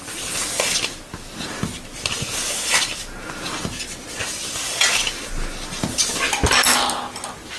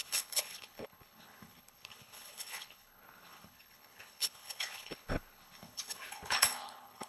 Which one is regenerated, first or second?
second